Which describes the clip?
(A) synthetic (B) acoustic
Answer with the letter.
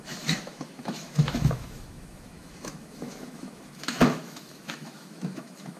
A